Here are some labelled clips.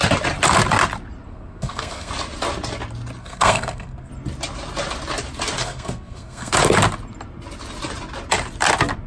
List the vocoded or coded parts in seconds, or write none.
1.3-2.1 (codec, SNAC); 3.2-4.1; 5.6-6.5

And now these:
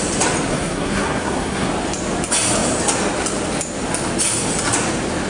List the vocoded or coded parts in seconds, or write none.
0.5-1.7 (codec, SNAC)

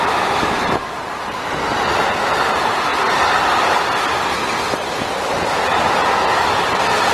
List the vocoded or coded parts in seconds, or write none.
0.0-0.8 (vocoder, BigVGAN v2); 2.2-2.9; 6.5-7.1

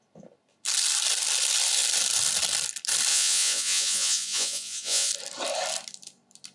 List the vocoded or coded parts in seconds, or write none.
3.1-5.1 (vocoder, Vocos)

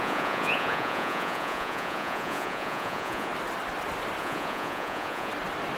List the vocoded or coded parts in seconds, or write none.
0.0-3.3 (vocoder, Vocos); 4.2-5.3